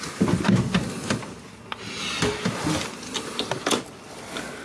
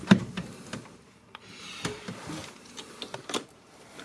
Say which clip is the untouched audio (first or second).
first